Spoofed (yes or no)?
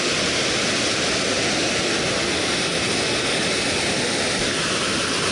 no